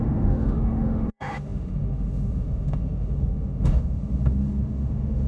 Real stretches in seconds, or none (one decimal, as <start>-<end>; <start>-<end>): none